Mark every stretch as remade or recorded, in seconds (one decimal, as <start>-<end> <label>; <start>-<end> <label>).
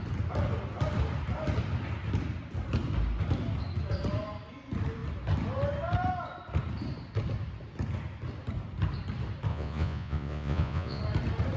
0.0-9.5 recorded; 9.5-11.0 remade; 11.0-11.6 recorded